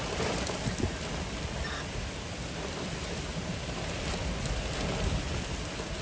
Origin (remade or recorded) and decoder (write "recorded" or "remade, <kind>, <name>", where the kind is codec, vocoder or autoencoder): recorded